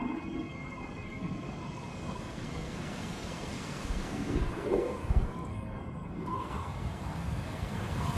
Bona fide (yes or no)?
no